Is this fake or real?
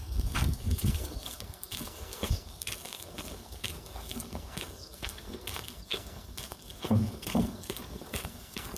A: fake